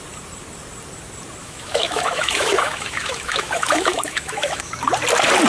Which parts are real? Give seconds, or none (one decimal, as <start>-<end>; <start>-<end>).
0.0-1.4; 4.7-5.5